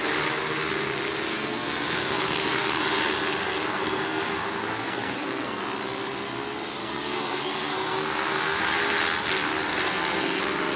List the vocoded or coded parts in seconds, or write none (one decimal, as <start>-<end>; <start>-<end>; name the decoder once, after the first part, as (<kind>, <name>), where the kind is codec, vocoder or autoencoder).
1.3-2.8 (codec, SNAC); 3.7-5.6; 6.8-8.7; 9.7-10.4